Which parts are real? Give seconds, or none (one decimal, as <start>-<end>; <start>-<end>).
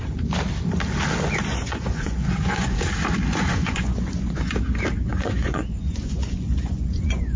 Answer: 0.0-1.5; 2.8-3.5; 4.5-5.1